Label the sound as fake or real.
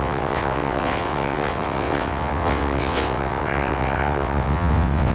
fake